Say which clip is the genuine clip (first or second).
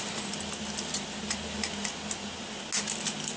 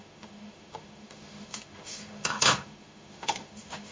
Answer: first